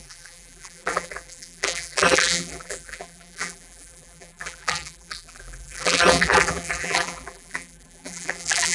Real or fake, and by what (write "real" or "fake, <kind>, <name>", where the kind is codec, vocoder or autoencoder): fake, vocoder, BigVGAN v2